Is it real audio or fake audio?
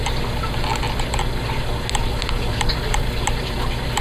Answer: real